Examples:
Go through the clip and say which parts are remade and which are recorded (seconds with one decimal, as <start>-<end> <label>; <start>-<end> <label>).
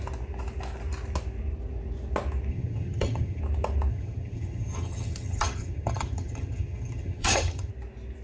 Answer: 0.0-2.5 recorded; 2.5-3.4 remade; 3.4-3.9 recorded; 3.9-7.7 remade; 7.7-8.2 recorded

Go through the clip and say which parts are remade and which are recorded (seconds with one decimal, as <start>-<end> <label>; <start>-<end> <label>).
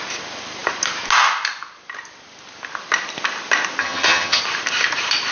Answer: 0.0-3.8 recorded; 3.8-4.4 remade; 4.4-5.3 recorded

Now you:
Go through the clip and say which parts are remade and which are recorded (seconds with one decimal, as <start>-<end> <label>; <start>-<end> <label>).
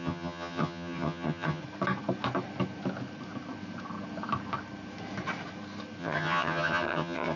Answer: 0.0-1.6 remade; 1.6-6.0 recorded; 6.0-7.4 remade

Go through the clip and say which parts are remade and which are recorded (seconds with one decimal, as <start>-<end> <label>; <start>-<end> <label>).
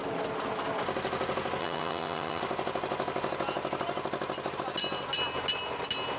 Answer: 0.0-1.6 recorded; 1.6-2.4 remade; 2.4-6.2 recorded